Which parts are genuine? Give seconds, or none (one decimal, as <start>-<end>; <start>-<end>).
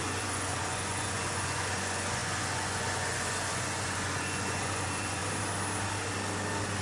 5.2-6.8